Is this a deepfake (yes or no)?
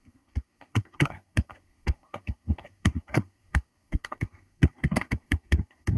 yes